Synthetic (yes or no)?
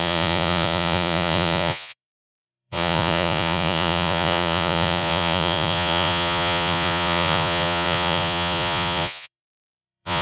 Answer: yes